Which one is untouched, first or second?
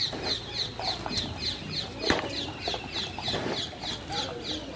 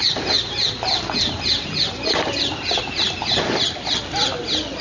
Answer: first